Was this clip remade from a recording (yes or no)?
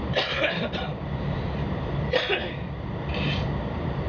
yes